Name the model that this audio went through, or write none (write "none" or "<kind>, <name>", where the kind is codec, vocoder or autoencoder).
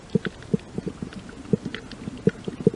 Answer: none